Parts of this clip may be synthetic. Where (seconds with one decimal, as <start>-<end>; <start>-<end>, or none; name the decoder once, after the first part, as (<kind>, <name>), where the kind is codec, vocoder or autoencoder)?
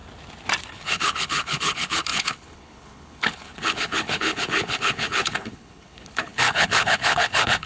0.7-7.7 (codec, HILCodec)